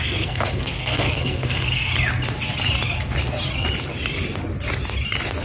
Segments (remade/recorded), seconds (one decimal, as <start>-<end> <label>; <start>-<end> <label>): 0.0-1.9 remade; 1.9-5.4 recorded